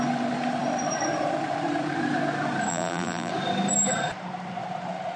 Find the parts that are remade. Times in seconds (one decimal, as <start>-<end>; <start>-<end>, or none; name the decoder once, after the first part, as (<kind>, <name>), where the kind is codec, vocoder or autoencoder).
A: 2.7-3.3 (vocoder, BigVGAN v2)